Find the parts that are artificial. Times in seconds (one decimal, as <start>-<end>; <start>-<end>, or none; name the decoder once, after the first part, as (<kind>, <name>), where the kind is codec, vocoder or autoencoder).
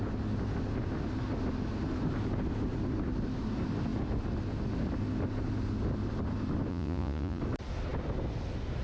6.7-7.4 (vocoder, Vocos)